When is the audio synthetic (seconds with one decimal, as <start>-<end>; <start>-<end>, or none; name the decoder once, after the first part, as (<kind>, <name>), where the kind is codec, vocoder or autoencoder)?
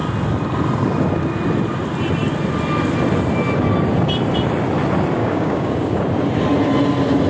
5.2-6.0 (codec, DAC)